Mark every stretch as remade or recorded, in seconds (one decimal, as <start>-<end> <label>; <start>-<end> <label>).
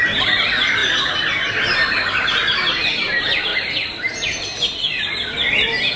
0.0-3.5 recorded; 3.5-4.1 remade; 4.1-6.0 recorded